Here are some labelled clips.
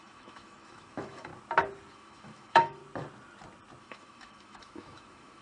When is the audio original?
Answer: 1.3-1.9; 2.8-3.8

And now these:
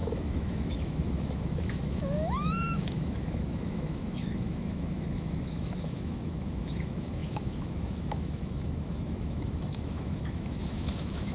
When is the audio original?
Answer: none

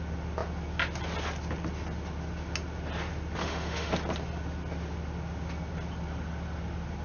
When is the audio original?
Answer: 0.0-3.4; 3.9-7.0

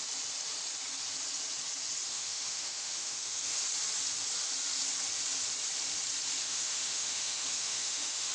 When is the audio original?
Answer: 0.0-2.1; 3.6-6.4

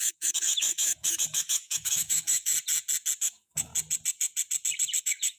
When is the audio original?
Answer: 2.5-3.2; 3.7-5.0